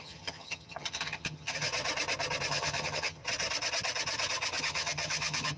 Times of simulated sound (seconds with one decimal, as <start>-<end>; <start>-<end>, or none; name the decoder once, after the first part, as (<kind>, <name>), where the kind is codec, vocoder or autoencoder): 0.0-1.7 (vocoder, HiFi-GAN); 2.5-3.2; 4.6-5.6